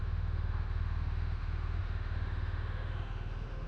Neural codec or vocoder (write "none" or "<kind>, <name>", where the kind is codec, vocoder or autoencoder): autoencoder, DAC-VAE